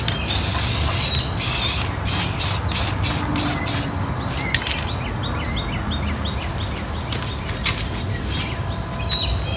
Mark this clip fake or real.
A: real